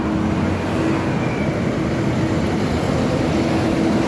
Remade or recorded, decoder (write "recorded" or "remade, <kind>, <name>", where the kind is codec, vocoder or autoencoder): recorded